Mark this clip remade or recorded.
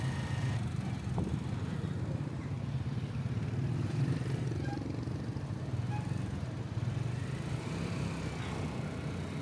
recorded